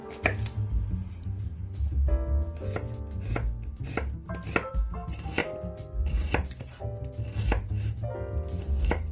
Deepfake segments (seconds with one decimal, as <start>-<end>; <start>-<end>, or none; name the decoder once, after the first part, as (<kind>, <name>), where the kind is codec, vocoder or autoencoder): 4.7-5.4 (vocoder, BigVGAN v2); 8.6-9.1